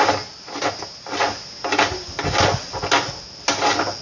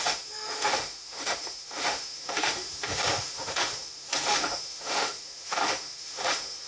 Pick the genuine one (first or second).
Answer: first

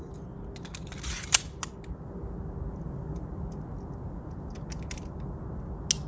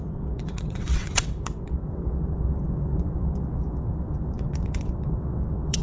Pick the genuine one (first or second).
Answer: first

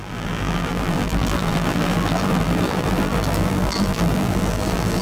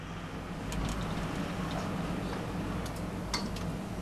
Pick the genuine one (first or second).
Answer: second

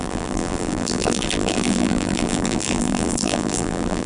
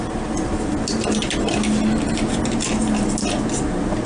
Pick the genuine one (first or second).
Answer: second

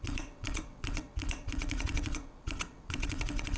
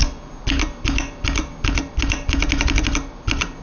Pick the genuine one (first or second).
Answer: second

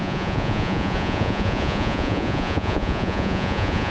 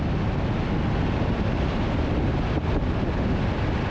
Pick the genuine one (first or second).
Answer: second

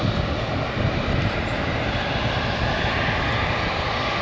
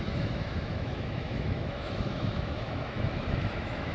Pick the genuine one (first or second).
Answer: first